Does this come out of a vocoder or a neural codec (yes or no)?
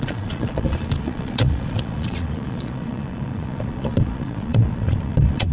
yes